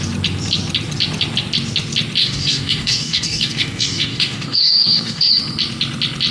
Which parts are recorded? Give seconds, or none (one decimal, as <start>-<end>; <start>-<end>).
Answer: 0.0-2.2; 5.3-6.3